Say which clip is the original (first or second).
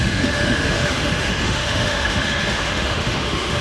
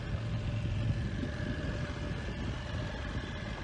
second